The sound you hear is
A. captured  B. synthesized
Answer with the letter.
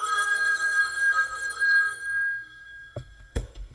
B